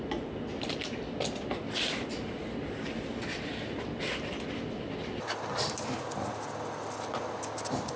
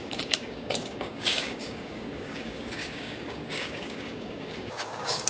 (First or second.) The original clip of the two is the first